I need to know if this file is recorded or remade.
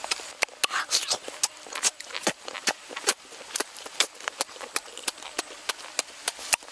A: recorded